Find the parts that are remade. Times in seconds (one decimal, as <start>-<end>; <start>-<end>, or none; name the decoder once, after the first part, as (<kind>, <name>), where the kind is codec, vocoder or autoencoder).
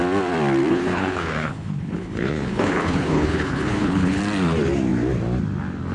0.7-4.2 (codec, HILCodec)